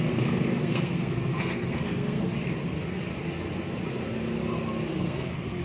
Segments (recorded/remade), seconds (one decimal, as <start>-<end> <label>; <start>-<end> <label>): 0.0-2.3 remade; 2.3-5.0 recorded; 5.0-5.6 remade